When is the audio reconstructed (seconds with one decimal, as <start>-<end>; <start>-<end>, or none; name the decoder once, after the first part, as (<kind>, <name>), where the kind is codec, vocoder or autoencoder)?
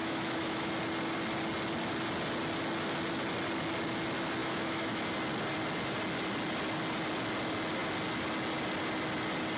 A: 0.0-0.7 (autoencoder, DAC-VAE); 4.4-5.0